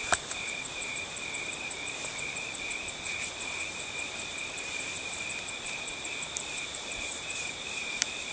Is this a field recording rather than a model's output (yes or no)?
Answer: no